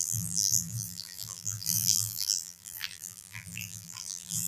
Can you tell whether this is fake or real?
fake